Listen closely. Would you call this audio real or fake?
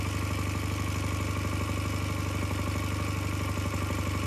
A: real